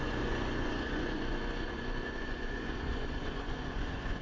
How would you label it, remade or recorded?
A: remade